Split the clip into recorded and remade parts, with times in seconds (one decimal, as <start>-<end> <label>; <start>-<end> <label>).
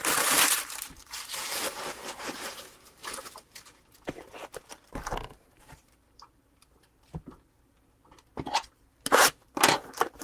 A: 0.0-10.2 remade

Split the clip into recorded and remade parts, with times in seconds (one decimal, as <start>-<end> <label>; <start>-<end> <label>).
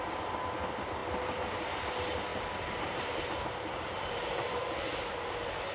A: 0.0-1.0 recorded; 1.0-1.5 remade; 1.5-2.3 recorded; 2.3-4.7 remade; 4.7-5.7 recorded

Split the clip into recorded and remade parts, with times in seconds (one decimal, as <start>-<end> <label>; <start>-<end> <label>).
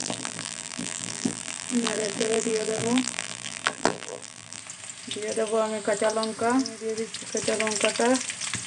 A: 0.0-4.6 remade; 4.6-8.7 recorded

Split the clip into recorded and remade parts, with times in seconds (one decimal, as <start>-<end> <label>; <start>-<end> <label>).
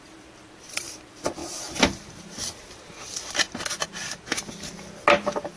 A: 0.0-5.6 recorded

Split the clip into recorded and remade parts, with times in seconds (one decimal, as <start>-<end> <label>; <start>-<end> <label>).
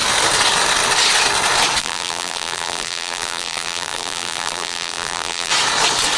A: 0.0-1.8 recorded; 1.8-5.5 remade; 5.5-6.2 recorded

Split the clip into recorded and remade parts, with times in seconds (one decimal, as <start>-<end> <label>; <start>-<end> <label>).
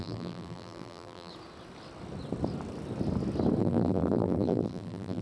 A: 0.0-1.3 remade; 1.3-3.6 recorded; 3.6-5.2 remade